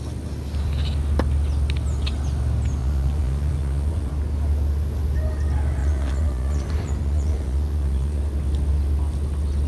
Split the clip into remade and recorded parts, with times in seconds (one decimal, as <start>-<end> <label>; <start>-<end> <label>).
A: 0.0-2.8 recorded; 2.8-4.1 remade; 4.1-5.8 recorded; 5.8-8.2 remade; 8.2-9.7 recorded